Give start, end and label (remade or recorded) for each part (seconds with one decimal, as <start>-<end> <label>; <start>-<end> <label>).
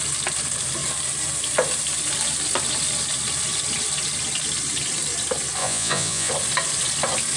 0.0-5.6 recorded; 5.6-6.3 remade; 6.3-7.4 recorded